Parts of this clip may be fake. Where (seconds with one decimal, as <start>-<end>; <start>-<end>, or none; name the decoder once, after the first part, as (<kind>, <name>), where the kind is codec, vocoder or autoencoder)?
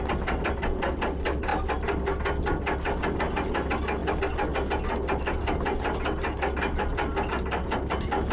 none